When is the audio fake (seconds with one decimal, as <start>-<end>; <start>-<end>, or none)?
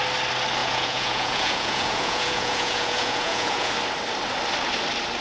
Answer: 0.6-3.7